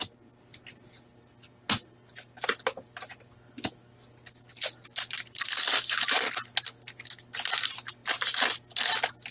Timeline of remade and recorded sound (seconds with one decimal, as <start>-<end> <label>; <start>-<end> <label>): 0.0-9.3 recorded